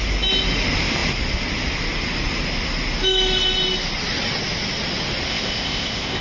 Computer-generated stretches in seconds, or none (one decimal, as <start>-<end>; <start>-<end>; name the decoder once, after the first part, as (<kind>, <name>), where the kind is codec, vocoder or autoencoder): 5.3-6.2 (codec, ZipCodec)